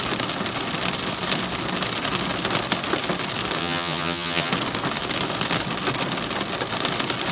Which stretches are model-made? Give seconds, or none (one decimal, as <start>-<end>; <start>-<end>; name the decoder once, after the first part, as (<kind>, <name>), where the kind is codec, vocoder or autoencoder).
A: 3.6-4.5 (vocoder, HiFi-GAN)